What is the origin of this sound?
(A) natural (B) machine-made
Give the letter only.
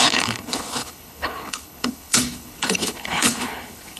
B